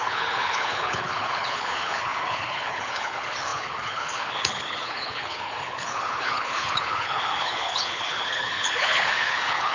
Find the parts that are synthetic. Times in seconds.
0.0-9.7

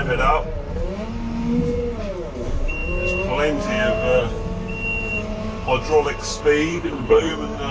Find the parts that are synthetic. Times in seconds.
6.7-7.3

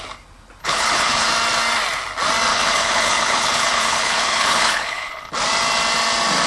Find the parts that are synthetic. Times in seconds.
0.6-1.3; 2.5-5.3

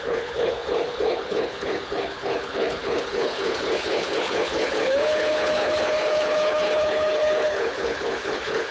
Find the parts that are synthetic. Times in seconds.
0.0-8.7

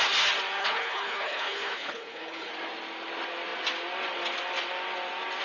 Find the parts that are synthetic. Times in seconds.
0.6-2.5

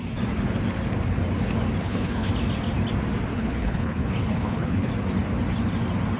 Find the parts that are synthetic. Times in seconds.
1.8-2.3; 3.3-4.9